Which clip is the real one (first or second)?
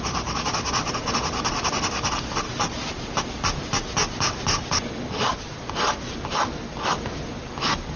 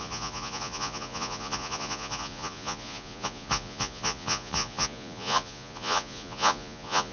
first